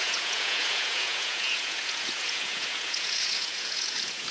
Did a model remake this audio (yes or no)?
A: yes